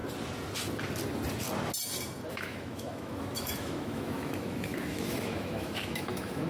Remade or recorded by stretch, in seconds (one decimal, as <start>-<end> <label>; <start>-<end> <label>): 0.0-2.3 recorded; 2.3-6.5 remade